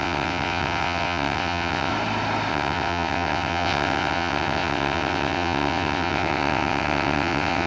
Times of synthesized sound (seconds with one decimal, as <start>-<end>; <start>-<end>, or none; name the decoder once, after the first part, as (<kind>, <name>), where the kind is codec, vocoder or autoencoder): 0.0-1.9 (vocoder, WaveNeXt); 2.5-7.7